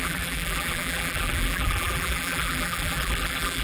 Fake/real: fake